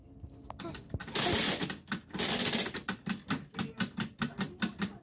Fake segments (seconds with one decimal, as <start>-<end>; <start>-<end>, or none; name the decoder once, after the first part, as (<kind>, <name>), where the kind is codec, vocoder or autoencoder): none